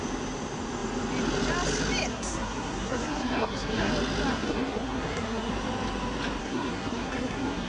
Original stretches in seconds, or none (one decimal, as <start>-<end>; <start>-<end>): 0.0-2.1; 3.9-4.3; 5.5-6.4